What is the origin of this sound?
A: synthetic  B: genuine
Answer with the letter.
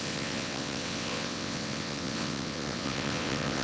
A